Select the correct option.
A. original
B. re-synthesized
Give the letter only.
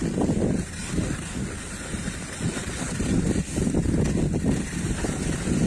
A